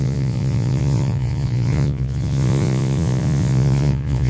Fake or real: fake